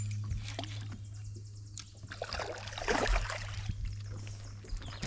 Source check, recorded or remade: recorded